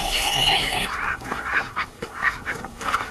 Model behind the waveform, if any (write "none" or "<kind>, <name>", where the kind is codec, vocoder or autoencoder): codec, SNAC